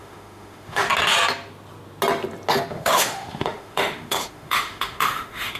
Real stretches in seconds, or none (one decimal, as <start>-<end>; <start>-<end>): 0.9-2.7